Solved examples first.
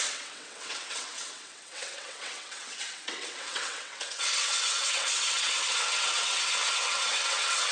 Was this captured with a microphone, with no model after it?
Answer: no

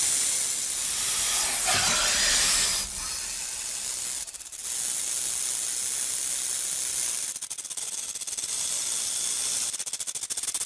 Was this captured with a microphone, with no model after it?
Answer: yes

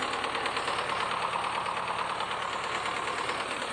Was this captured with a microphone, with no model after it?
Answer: yes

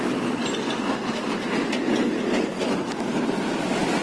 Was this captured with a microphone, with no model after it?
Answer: yes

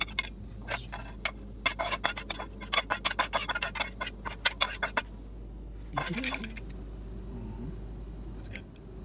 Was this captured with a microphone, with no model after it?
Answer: yes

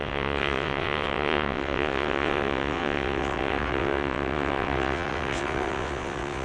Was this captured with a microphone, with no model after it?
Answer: no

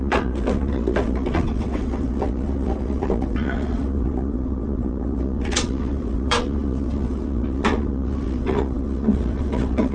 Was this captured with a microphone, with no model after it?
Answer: no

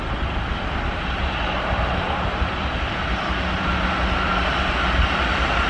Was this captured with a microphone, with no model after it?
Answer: yes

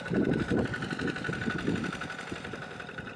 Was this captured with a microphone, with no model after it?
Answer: yes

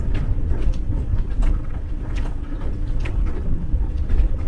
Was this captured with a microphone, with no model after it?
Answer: no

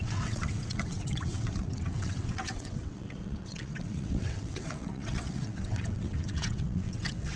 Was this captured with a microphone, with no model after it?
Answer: no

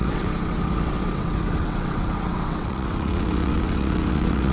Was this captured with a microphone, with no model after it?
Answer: no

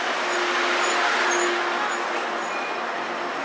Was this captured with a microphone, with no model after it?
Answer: yes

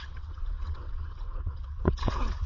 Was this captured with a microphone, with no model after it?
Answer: no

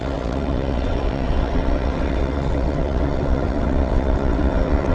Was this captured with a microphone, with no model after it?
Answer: no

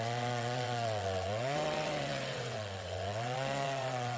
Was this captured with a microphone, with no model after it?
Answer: no